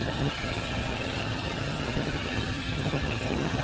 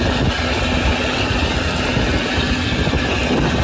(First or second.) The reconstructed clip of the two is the first